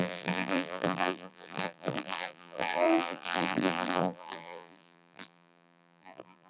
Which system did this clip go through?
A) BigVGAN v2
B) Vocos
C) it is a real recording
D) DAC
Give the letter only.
A